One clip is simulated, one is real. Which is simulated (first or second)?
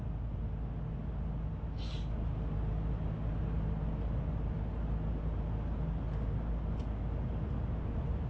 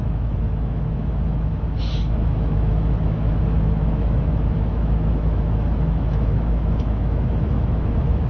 second